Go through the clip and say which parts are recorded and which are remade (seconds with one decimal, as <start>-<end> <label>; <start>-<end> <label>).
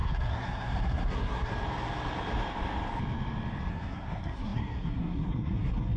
0.0-1.5 remade; 1.5-3.7 recorded; 3.7-6.0 remade